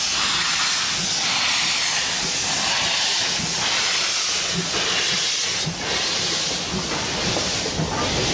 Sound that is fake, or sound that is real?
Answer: real